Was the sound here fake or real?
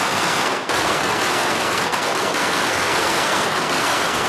fake